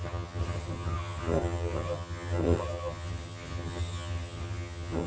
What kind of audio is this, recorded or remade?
remade